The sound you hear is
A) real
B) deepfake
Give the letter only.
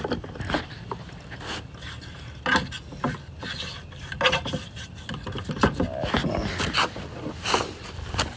A